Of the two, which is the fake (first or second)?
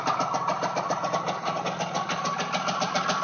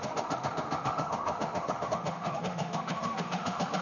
second